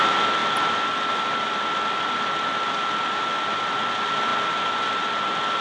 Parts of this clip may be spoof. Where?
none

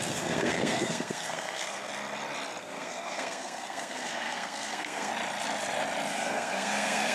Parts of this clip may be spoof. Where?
0.0-1.9 (codec, SNAC); 2.6-5.1; 6.1-7.1